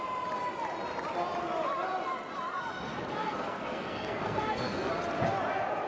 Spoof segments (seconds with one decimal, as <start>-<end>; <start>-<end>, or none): 3.2-4.9